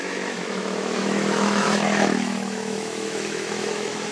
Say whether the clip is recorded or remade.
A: remade